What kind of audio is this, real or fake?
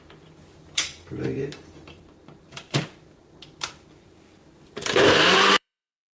fake